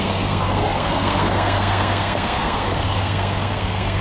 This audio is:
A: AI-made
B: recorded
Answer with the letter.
A